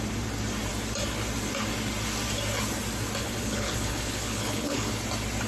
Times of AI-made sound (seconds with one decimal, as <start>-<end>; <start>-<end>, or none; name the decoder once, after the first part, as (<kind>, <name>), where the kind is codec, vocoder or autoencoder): 3.2-5.0 (codec, HILCodec)

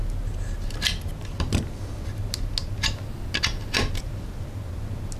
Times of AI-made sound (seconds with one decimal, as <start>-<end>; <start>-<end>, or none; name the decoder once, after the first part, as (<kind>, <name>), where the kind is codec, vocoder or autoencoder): none

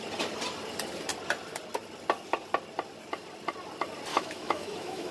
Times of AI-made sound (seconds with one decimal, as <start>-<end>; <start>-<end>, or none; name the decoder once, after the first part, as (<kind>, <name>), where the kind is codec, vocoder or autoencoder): 4.1-5.1 (autoencoder, DAC-VAE)